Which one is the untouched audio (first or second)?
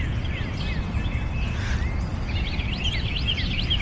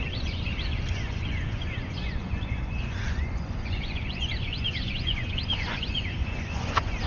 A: first